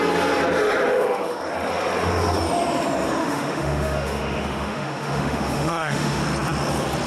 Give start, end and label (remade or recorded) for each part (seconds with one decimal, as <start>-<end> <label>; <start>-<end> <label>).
0.0-0.9 recorded; 0.9-1.4 remade; 1.4-3.2 recorded; 3.2-6.2 remade; 6.2-7.1 recorded